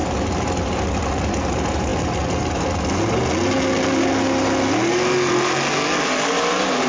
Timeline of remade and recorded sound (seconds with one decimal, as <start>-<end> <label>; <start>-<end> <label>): 0.0-6.9 recorded